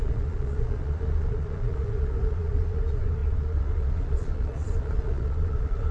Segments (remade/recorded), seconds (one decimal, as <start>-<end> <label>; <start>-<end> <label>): 0.0-5.9 remade